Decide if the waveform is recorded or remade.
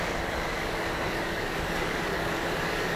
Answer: remade